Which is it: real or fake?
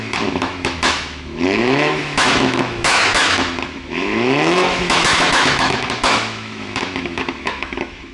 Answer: fake